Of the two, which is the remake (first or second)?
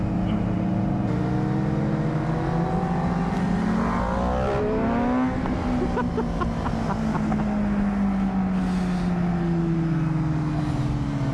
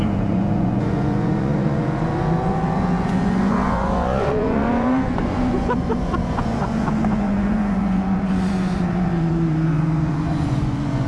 second